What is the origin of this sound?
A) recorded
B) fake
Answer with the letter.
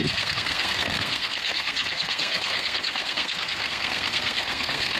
B